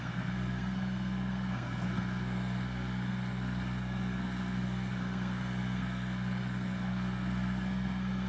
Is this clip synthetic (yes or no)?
yes